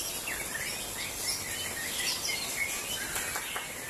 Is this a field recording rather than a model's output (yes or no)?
yes